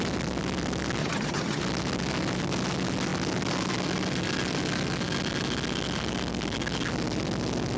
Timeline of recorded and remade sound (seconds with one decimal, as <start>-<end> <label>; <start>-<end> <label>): 0.0-1.0 recorded; 1.0-1.6 remade; 1.6-7.8 recorded